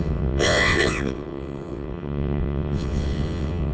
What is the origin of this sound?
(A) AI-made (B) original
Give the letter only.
A